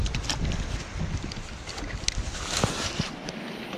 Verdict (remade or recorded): recorded